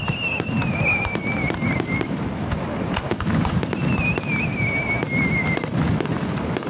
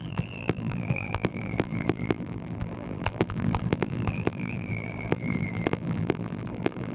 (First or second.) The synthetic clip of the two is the second